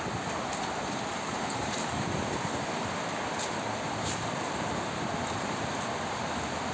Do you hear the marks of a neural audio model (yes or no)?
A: yes